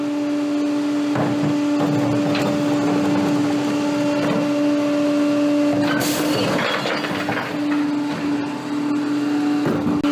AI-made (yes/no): no